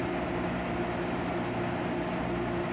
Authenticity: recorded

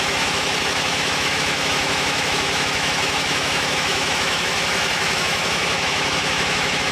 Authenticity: remade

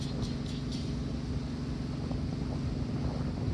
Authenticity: recorded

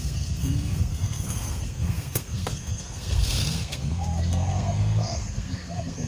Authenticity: remade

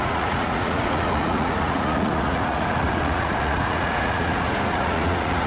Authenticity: remade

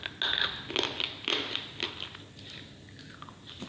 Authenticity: recorded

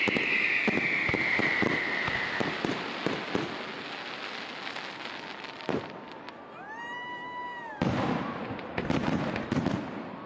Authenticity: recorded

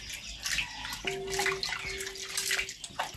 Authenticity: recorded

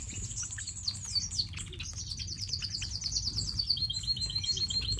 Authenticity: recorded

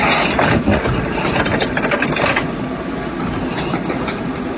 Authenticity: recorded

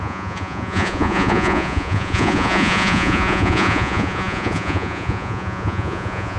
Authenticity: remade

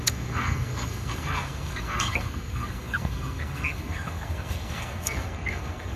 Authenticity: remade